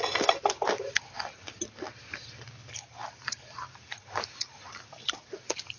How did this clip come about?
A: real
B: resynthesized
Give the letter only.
A